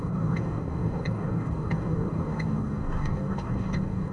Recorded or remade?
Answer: remade